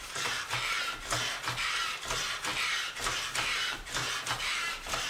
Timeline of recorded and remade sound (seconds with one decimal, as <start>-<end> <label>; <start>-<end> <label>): 0.0-5.1 recorded